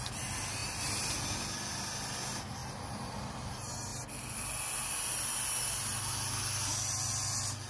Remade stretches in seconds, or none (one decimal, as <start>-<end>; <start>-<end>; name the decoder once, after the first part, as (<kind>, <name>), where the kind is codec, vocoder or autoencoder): 0.6-1.2 (vocoder, BigVGAN v2)